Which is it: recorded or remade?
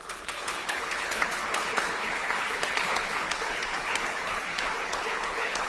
remade